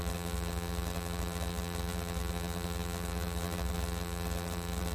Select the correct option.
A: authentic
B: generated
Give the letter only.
B